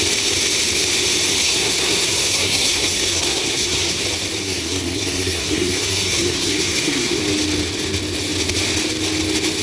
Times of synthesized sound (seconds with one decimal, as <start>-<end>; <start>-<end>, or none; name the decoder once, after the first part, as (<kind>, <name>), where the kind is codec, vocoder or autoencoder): 1.4-4.0 (codec, SNAC); 4.4-7.2